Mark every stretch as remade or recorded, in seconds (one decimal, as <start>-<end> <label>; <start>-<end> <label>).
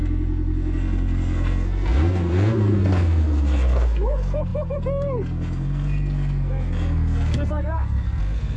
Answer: 0.0-8.6 remade